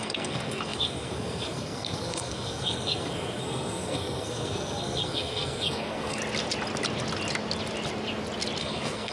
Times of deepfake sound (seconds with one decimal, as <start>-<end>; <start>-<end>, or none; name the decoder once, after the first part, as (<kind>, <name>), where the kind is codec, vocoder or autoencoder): 0.0-6.2 (codec, SNAC); 8.6-9.1